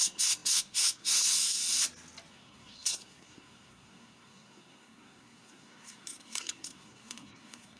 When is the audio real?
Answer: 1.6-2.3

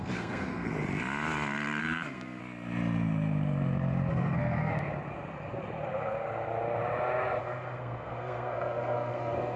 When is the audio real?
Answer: 0.7-1.8; 2.4-4.1; 4.7-7.4